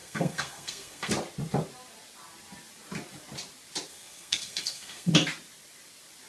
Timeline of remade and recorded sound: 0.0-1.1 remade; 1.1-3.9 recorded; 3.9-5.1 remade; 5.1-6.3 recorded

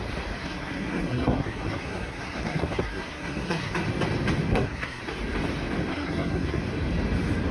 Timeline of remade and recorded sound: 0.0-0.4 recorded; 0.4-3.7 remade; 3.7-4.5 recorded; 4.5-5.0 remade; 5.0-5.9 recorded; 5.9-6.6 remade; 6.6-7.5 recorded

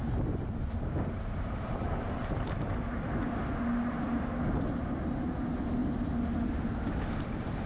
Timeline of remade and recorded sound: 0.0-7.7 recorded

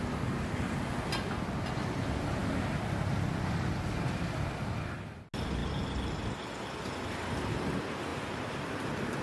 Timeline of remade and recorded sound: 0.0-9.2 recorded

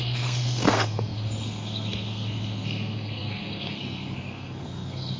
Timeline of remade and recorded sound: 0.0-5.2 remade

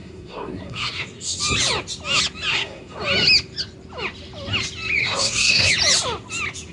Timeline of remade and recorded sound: 0.0-1.4 remade; 1.4-2.5 recorded; 2.5-3.0 remade; 3.0-5.0 recorded; 5.0-5.7 remade; 5.7-6.7 recorded

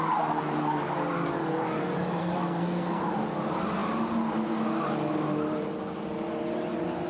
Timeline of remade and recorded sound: 0.0-2.2 recorded; 2.2-3.0 remade; 3.0-7.1 recorded